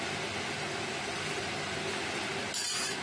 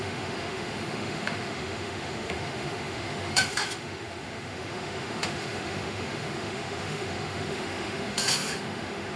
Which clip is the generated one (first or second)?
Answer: second